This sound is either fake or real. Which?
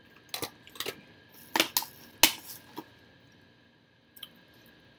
real